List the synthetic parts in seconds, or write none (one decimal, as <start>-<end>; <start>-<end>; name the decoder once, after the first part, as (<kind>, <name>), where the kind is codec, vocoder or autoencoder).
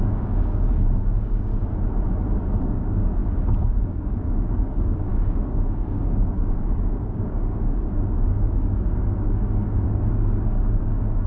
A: 0.0-1.5 (codec, DAC); 2.6-11.3